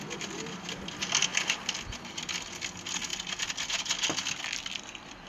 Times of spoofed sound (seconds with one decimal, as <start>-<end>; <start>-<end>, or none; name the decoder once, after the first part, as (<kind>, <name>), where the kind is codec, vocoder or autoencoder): none

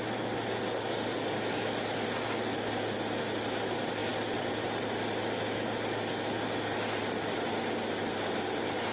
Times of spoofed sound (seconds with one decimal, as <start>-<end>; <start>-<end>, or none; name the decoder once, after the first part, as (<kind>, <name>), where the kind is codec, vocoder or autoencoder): none